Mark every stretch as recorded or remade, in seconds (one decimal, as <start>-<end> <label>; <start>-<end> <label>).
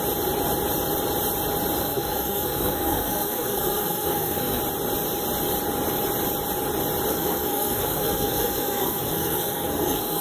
0.0-1.8 recorded; 1.8-4.6 remade; 4.6-7.1 recorded; 7.1-10.2 remade